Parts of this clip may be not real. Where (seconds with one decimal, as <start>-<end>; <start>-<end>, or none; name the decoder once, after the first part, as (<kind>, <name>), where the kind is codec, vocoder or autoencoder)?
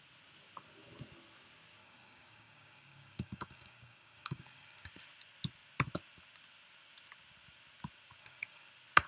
1.8-4.9 (codec, DAC); 8.2-8.7